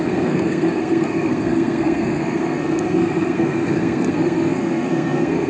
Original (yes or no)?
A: no